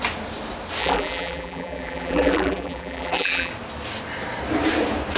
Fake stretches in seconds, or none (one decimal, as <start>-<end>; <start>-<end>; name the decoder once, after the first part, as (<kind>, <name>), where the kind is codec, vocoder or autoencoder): 0.8-3.5 (vocoder, BigVGAN v2)